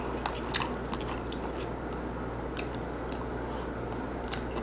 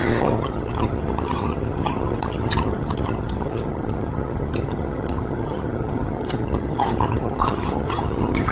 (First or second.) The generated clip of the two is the second